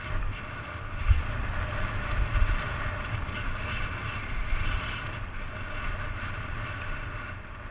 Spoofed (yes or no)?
no